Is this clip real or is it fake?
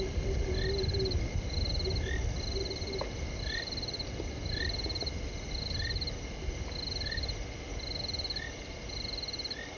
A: real